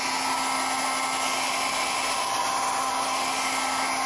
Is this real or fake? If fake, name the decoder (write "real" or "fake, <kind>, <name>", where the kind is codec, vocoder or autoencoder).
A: real